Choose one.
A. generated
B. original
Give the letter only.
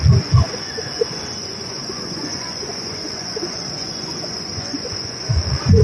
A